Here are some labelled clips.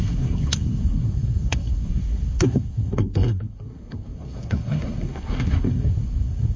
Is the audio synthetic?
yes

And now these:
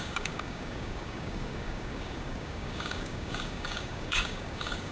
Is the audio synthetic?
yes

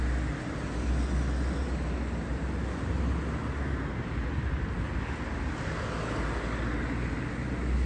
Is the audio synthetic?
no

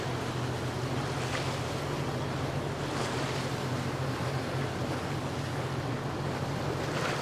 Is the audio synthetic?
no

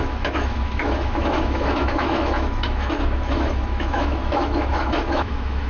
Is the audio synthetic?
yes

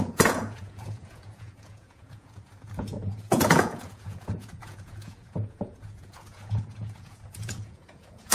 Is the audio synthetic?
yes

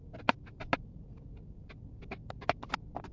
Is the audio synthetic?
no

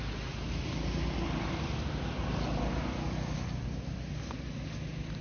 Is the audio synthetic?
no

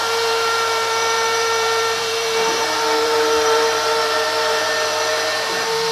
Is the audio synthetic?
yes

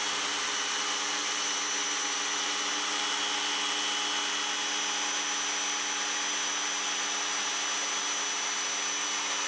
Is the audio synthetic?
no